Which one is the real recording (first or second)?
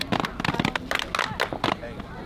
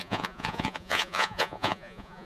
first